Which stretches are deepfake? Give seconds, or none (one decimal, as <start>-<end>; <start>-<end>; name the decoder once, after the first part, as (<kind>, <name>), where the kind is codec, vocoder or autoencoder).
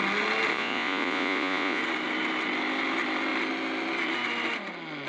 0.5-1.8 (vocoder, Vocos)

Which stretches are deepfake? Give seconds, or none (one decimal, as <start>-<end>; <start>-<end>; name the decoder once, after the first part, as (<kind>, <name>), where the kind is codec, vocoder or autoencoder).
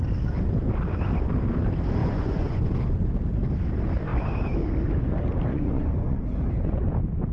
2.0-2.8 (vocoder, Vocos); 5.5-6.2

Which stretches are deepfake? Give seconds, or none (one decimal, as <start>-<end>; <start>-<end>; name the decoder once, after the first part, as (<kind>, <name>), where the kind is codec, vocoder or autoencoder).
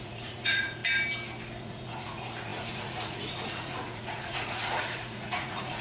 0.0-0.8 (vocoder, Vocos); 1.6-5.8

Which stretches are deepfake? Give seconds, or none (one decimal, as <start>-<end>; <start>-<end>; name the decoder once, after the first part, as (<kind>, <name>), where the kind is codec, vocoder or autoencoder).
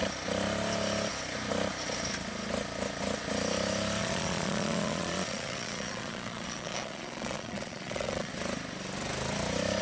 4.0-8.3 (vocoder, Vocos)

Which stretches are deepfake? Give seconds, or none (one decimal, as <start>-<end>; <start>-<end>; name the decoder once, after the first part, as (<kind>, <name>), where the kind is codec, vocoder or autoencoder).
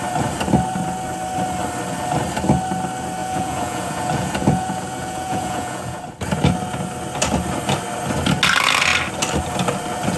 3.2-6.0 (vocoder, Vocos)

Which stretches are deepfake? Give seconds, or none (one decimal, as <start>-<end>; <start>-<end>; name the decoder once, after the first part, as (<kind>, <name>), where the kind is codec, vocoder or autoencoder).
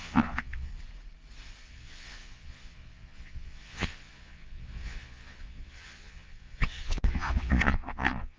0.0-0.7 (vocoder, Vocos); 1.6-8.4